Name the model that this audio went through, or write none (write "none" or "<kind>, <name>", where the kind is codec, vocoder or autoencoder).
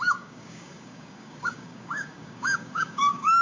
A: codec, DAC